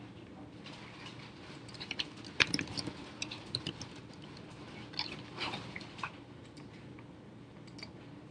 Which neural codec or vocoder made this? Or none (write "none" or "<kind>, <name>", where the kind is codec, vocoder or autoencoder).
none